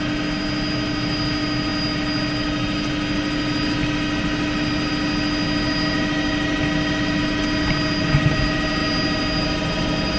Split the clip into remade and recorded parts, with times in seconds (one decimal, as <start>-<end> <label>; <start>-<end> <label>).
0.0-10.2 recorded